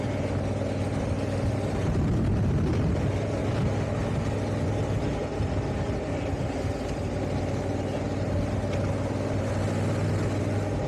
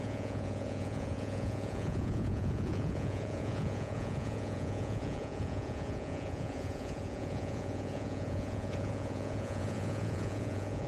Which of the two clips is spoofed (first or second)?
second